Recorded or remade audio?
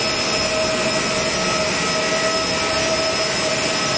recorded